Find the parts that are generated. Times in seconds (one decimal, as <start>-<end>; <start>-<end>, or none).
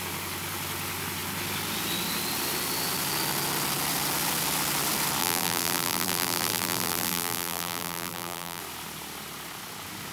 5.2-8.6